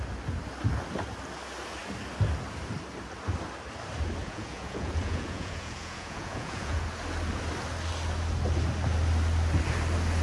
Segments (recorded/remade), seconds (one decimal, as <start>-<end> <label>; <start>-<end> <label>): 0.0-4.2 recorded; 4.2-6.8 remade; 6.8-10.2 recorded